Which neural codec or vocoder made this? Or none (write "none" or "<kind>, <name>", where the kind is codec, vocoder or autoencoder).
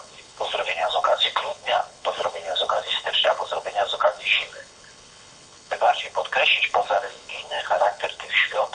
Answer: codec, HILCodec